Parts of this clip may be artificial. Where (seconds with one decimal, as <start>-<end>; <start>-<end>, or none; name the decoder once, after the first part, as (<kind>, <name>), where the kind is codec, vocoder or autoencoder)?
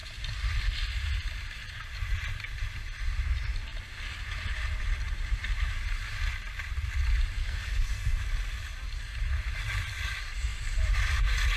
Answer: 7.4-8.2 (codec, SNAC)